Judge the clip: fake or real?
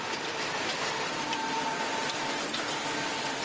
real